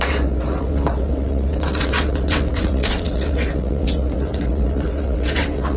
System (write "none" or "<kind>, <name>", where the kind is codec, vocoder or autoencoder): vocoder, WaveNeXt